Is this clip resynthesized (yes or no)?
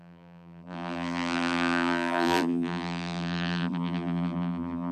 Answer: yes